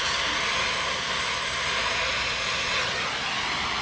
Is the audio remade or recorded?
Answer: recorded